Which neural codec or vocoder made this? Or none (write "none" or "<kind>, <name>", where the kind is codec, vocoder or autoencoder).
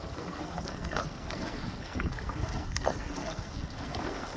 codec, SNAC